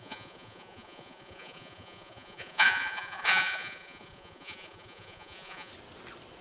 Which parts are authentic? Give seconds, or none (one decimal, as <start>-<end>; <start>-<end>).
5.7-6.4